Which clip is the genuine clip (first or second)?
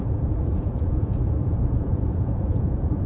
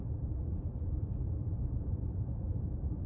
second